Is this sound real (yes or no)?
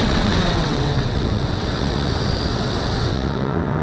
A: no